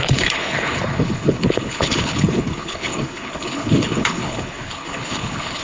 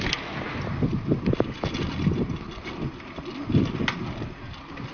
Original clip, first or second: second